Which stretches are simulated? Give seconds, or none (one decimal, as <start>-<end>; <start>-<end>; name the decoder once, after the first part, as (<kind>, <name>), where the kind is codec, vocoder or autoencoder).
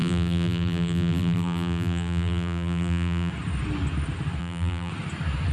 0.0-3.3 (vocoder, BigVGAN v2); 4.4-4.9